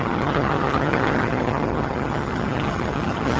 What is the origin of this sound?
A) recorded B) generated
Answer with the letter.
B